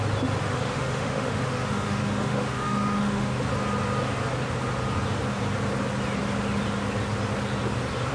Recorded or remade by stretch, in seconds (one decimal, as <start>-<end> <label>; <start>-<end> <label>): 0.0-0.4 recorded; 0.4-3.4 remade; 3.4-8.1 recorded